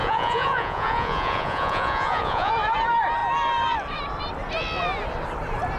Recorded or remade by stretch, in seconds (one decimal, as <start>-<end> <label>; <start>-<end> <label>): 0.0-2.5 remade; 2.5-5.8 recorded